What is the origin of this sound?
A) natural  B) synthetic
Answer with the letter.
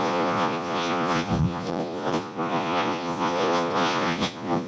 B